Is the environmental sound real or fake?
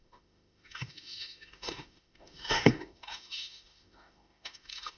fake